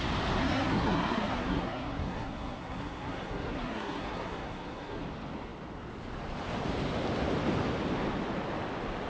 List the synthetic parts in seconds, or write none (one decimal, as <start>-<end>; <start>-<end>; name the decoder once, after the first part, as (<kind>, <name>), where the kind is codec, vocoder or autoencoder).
0.4-5.0 (codec, SNAC)